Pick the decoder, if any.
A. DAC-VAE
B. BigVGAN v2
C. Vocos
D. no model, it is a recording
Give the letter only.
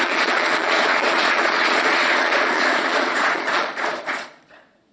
C